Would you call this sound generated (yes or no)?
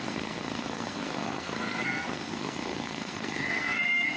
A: yes